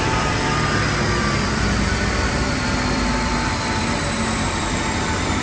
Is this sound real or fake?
fake